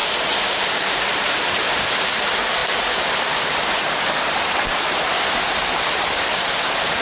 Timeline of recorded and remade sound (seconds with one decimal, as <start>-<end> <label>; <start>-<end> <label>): 0.0-7.0 recorded